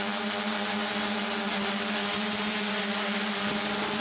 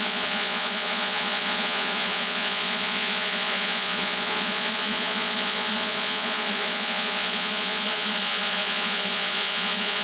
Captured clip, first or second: first